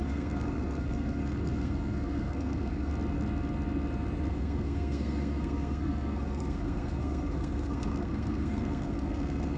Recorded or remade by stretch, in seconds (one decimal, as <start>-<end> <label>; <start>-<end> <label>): 0.0-2.9 remade; 2.9-4.3 recorded; 4.3-9.6 remade